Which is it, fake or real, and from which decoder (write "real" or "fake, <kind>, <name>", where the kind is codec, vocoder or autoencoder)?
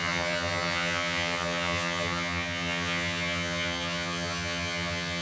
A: fake, vocoder, HiFi-GAN